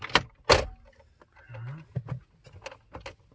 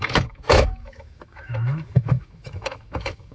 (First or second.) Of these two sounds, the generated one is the second